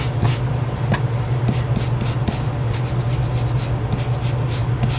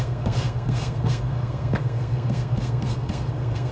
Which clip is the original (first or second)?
first